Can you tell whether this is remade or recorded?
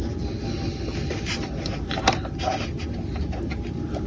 recorded